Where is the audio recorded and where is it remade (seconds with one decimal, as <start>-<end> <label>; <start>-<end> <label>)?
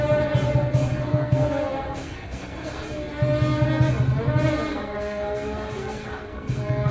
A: 0.0-1.1 recorded; 1.1-2.8 remade; 2.8-4.7 recorded; 4.7-6.9 remade